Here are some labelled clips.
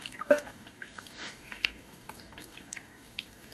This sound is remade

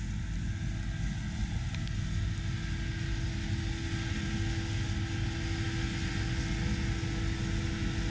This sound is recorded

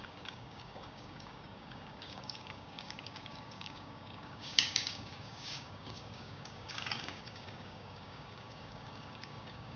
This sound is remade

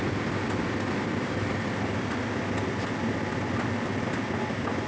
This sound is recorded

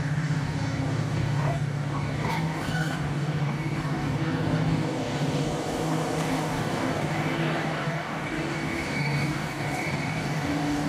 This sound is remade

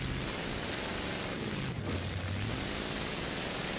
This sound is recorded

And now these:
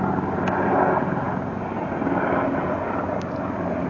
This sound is recorded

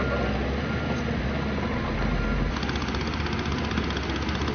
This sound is recorded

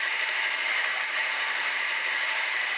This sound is remade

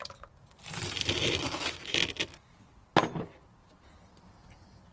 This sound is recorded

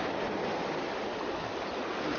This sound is recorded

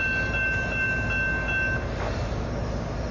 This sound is recorded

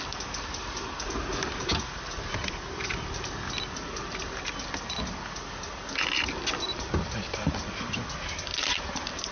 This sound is recorded